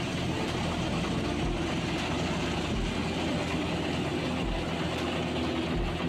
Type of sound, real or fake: real